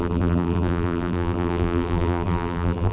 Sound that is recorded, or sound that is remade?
remade